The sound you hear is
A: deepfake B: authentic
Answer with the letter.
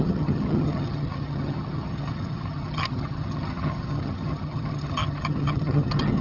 A